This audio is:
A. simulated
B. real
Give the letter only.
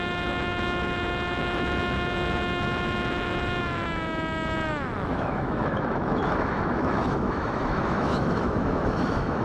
A